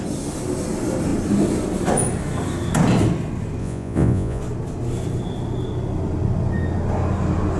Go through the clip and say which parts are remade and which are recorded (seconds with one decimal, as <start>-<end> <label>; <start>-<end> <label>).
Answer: 0.0-3.6 recorded; 3.6-4.4 remade; 4.4-7.6 recorded